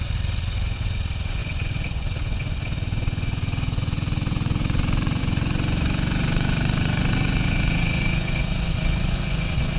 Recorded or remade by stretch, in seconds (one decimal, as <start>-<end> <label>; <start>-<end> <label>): 0.0-9.8 remade